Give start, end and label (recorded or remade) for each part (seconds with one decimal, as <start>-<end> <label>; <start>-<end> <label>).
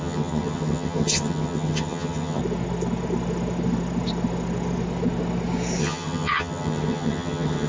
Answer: 0.0-2.4 remade; 2.4-5.8 recorded; 5.8-7.7 remade